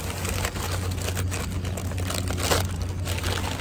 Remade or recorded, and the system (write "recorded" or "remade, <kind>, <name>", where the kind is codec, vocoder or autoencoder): recorded